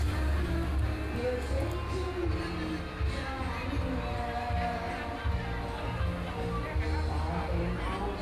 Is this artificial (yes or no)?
no